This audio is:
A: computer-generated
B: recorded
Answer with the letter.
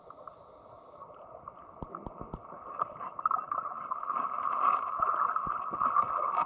B